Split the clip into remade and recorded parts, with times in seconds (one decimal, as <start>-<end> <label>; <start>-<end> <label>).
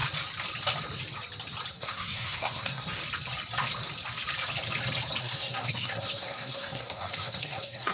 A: 0.0-1.7 recorded; 1.7-3.0 remade; 3.0-5.2 recorded; 5.2-7.9 remade